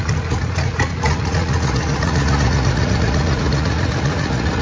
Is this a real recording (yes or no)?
no